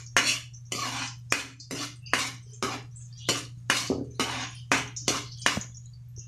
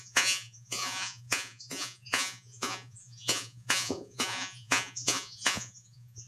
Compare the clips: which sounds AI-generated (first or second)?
second